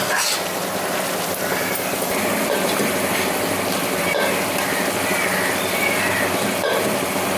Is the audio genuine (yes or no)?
yes